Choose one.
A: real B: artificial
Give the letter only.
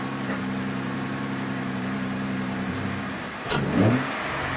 B